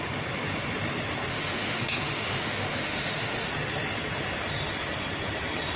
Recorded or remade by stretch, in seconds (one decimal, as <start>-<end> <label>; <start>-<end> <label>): 0.0-1.3 recorded; 1.3-3.5 remade; 3.5-5.8 recorded